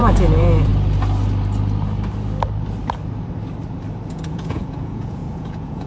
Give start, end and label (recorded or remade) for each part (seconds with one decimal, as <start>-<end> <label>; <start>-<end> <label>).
0.0-0.7 remade; 0.7-4.1 recorded; 4.1-5.9 remade